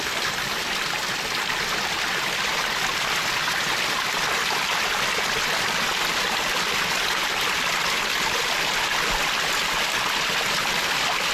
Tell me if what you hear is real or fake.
real